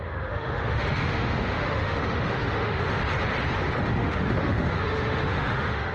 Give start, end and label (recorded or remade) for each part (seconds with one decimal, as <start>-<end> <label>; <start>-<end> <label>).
0.0-3.0 remade; 3.0-3.8 recorded; 3.8-5.9 remade